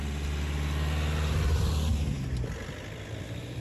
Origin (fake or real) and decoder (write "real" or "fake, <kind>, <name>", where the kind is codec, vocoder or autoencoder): real